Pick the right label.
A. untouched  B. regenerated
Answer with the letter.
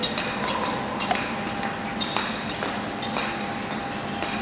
A